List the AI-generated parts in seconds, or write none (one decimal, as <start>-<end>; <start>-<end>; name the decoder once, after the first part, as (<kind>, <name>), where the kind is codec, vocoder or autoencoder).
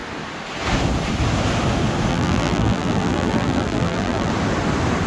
2.1-4.3 (vocoder, BigVGAN v2)